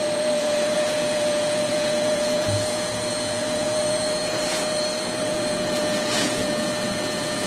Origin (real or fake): fake